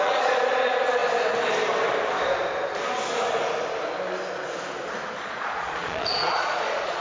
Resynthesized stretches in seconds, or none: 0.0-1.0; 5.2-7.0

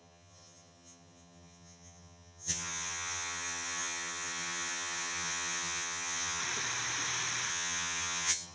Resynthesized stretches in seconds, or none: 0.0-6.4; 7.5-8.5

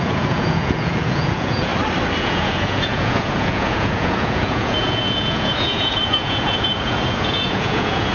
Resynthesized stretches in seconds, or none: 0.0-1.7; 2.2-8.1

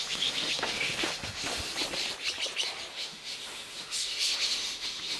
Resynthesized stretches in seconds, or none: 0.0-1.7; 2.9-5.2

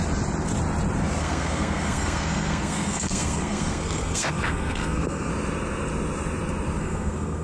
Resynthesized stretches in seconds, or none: 1.2-5.3; 6.8-7.4